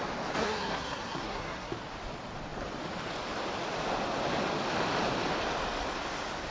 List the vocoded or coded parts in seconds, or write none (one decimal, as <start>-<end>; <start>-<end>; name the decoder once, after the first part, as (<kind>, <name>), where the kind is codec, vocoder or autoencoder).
0.4-1.7 (codec, SNAC)